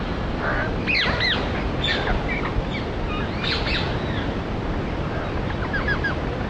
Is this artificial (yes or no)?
no